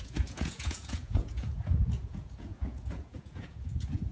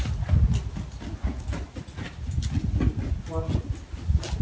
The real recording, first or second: second